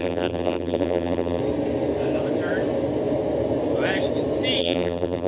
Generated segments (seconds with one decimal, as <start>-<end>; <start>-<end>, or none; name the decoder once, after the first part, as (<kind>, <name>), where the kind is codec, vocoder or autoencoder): 0.0-1.4 (vocoder, BigVGAN v2); 4.6-5.3